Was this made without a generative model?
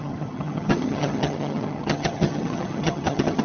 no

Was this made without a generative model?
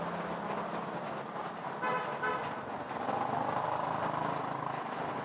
yes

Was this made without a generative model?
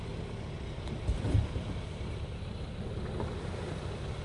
yes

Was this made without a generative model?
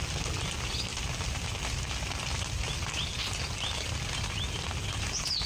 yes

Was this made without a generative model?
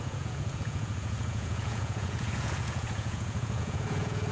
no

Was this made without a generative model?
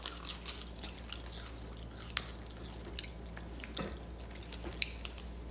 yes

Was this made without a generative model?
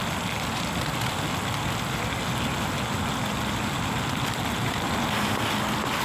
yes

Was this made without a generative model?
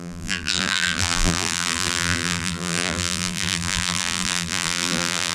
no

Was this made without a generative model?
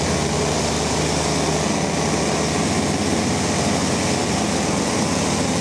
yes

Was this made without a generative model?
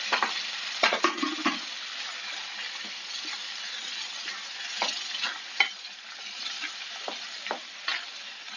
yes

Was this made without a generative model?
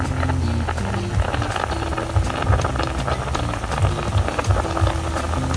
yes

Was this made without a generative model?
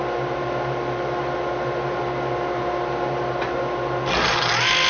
yes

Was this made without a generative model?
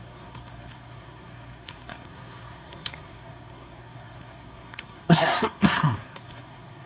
no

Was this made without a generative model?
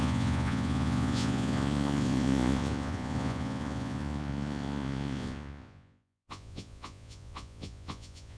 no